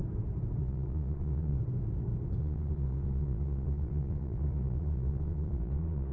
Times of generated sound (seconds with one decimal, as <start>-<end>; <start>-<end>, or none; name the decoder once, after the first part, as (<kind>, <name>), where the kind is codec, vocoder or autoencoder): 0.6-1.6 (vocoder, Vocos); 2.4-6.1